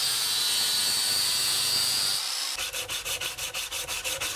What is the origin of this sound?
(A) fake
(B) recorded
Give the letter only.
B